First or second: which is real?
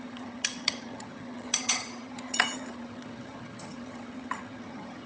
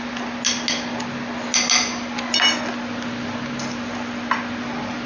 second